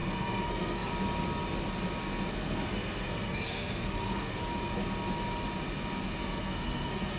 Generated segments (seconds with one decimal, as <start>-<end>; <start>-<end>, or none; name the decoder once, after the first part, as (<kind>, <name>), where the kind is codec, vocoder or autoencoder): 0.0-0.9 (codec, SNAC); 2.3-4.4; 6.2-7.2